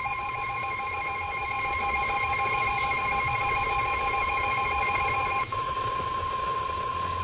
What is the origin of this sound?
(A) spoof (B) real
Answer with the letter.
A